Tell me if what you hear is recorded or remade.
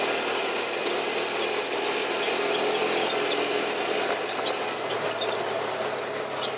recorded